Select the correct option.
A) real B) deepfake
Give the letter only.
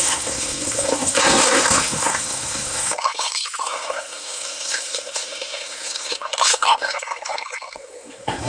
B